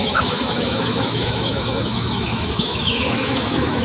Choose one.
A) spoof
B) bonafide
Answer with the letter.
A